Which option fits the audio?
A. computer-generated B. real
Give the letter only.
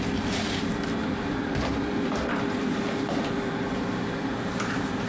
A